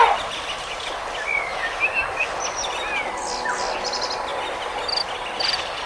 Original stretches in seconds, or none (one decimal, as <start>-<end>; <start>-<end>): 0.0-5.9